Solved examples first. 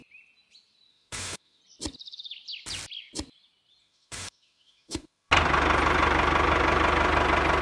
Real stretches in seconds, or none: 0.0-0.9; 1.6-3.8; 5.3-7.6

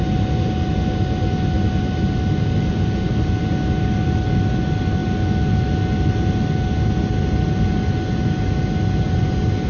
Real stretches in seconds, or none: 0.0-9.7